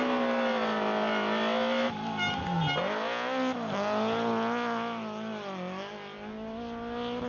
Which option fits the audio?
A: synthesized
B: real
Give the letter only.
B